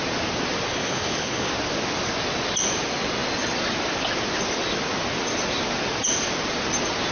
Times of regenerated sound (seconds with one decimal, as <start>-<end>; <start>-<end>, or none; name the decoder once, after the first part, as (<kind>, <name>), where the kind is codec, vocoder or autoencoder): 0.7-1.5 (codec, HILCodec)